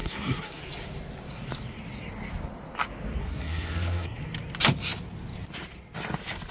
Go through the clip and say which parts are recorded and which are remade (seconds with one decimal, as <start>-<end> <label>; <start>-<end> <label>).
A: 0.0-0.6 remade; 0.6-3.2 recorded; 3.2-4.2 remade; 4.2-6.5 recorded